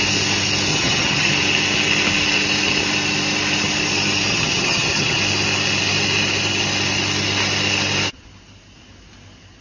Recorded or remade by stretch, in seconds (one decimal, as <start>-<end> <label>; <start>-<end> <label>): 0.0-0.7 recorded; 0.7-1.3 remade; 1.3-4.3 recorded; 4.3-5.2 remade; 5.2-9.6 recorded